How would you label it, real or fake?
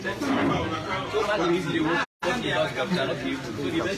real